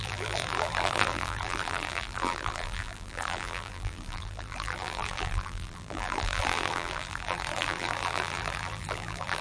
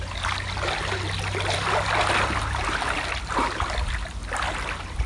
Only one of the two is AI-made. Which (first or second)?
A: first